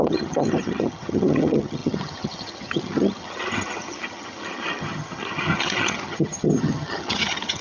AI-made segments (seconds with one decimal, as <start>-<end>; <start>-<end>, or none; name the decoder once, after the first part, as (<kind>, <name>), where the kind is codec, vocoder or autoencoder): 0.0-7.6 (vocoder, HiFi-GAN)